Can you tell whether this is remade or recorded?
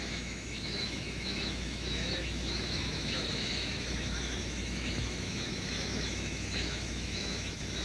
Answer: remade